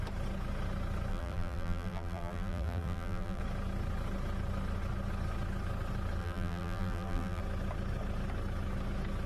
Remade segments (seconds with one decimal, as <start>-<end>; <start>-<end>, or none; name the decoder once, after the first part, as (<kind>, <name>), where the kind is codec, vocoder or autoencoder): 1.1-3.4 (vocoder, BigVGAN v2); 6.2-7.4